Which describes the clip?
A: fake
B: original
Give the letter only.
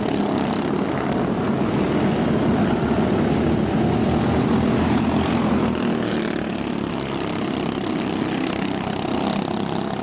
B